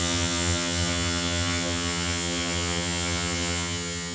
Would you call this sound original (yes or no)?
no